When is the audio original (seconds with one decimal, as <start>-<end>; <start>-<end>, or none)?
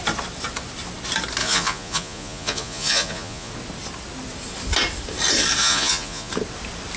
0.0-1.4; 3.5-5.6; 6.3-7.0